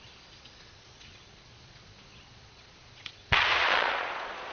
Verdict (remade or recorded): remade